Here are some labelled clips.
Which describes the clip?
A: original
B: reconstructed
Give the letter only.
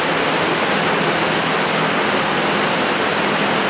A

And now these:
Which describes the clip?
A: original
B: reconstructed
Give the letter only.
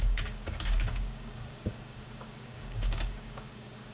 B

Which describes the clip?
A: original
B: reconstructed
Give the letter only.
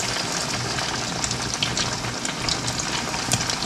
A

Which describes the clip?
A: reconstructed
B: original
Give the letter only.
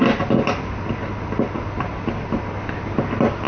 B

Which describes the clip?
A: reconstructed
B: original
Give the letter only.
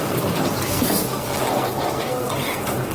A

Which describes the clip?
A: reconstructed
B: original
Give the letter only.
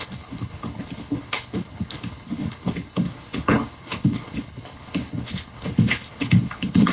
A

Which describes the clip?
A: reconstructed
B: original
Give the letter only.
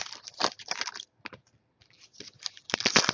B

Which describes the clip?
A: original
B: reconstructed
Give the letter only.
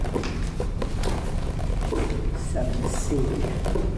A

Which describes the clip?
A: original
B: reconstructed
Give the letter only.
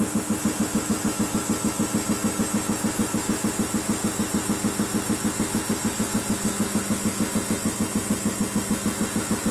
A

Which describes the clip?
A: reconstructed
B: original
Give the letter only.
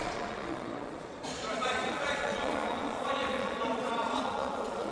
A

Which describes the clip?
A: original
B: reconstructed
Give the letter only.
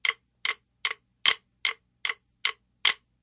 A